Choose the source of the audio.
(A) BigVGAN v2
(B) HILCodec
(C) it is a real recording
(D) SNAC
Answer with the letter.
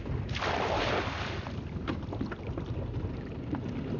C